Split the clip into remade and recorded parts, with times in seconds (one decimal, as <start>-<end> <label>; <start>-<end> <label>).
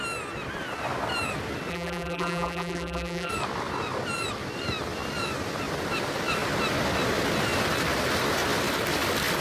0.0-1.7 recorded; 1.7-3.3 remade; 3.3-9.4 recorded